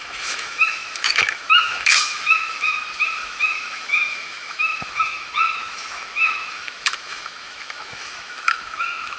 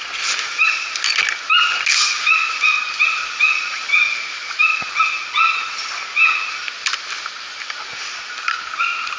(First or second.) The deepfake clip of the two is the first